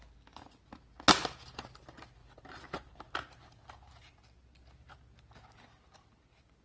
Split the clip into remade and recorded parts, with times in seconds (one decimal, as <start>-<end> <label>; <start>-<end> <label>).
0.0-6.6 recorded